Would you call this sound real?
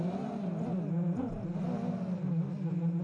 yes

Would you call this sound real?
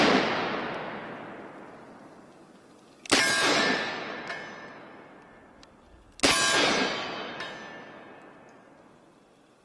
yes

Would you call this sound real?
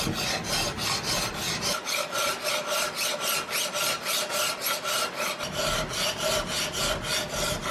yes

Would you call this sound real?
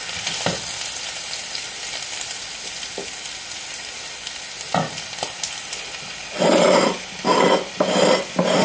yes